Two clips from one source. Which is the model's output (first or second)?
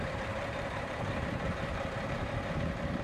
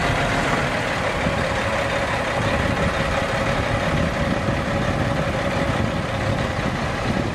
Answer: first